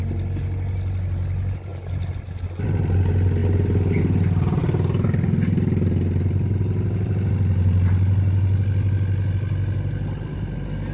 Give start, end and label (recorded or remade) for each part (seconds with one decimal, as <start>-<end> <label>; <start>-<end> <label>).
0.0-10.9 recorded